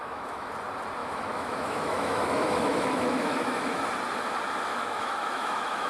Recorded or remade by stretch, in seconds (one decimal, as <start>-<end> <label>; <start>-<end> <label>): 0.0-0.5 remade; 0.5-1.0 recorded; 1.0-3.8 remade; 3.8-4.7 recorded; 4.7-5.9 remade

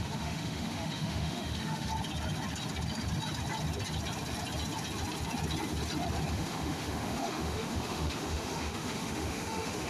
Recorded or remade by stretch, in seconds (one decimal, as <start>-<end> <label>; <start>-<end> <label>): 0.0-1.9 remade; 1.9-6.3 recorded; 6.3-9.9 remade

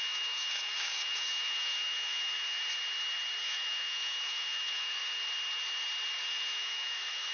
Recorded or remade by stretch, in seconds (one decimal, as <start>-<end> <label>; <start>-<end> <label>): 0.0-2.6 remade; 2.6-3.4 recorded; 3.4-5.0 remade; 5.0-6.3 recorded; 6.3-7.3 remade

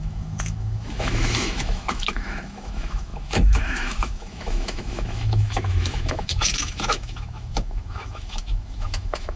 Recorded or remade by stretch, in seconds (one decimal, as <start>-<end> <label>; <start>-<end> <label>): 0.0-9.4 remade

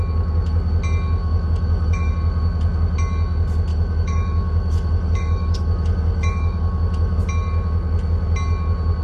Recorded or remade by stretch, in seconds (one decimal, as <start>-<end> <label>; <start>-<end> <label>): 0.0-1.2 recorded; 1.2-2.1 remade; 2.1-3.7 recorded; 3.7-7.2 remade; 7.2-9.0 recorded

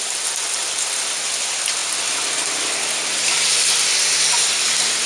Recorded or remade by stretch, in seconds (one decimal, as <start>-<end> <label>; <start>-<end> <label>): 0.0-5.1 recorded

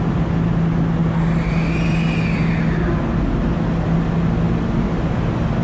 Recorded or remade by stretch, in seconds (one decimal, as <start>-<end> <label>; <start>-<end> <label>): 0.0-5.6 recorded

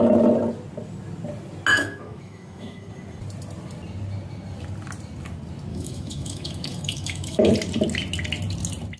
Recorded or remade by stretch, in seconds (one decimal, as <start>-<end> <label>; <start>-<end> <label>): 0.0-1.7 recorded; 1.7-2.9 remade; 2.9-5.7 recorded; 5.7-7.5 remade; 7.5-9.0 recorded